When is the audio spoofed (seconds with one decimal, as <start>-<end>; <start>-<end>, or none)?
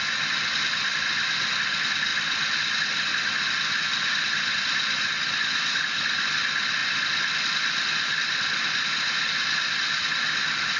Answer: none